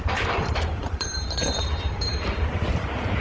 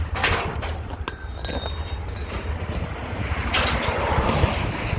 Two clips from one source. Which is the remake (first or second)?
first